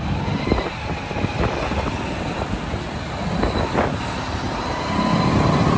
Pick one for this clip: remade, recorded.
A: recorded